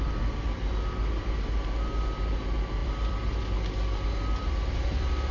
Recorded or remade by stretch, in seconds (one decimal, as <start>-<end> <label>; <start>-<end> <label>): 0.0-2.8 recorded; 2.8-3.4 remade; 3.4-5.3 recorded